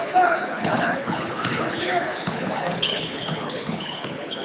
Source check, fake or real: fake